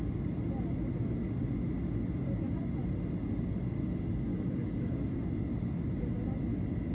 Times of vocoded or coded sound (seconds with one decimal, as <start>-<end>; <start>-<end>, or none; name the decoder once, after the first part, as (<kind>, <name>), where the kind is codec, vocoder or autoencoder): 4.3-5.0 (codec, DAC)